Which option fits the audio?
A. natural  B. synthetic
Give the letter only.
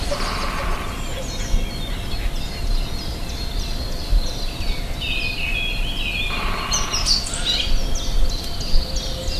A